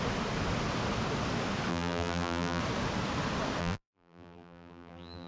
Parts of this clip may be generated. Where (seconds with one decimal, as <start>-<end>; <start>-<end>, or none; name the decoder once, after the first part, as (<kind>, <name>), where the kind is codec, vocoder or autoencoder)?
1.7-2.6 (vocoder, BigVGAN v2); 3.6-5.3